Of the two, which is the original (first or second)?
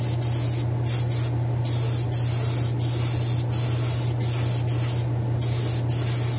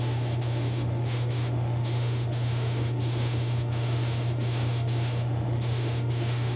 first